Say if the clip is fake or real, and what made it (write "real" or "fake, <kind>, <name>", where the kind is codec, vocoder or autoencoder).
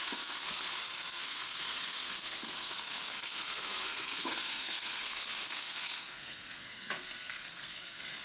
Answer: fake, codec, SNAC